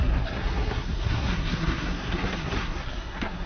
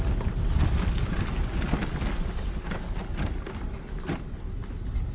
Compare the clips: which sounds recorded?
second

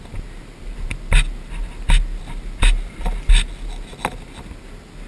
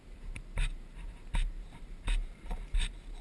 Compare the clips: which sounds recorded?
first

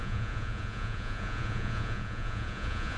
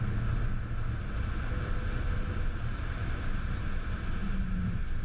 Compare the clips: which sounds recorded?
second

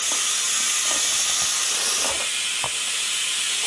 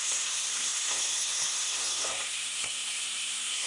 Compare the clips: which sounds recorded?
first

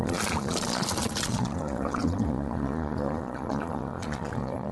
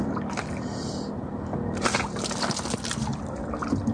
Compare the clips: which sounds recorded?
second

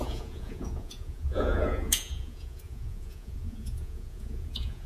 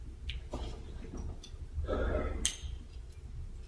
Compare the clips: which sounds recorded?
second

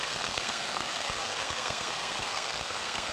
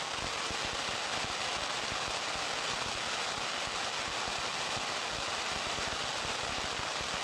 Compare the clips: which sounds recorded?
second